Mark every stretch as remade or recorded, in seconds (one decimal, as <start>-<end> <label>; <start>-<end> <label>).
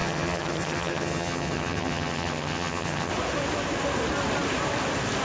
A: 0.0-3.1 remade; 3.1-5.2 recorded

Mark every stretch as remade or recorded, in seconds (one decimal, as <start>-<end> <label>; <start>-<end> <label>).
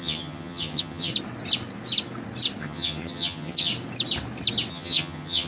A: 0.0-1.1 remade; 1.1-2.6 recorded; 2.6-3.7 remade; 3.7-4.7 recorded; 4.7-5.5 remade